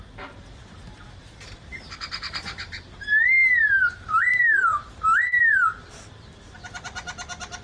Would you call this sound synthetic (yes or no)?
yes